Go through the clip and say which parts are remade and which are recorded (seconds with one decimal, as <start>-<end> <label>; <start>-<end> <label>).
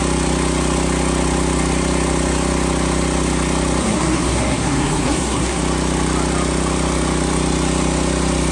0.0-3.8 recorded; 3.8-5.6 remade; 5.6-8.5 recorded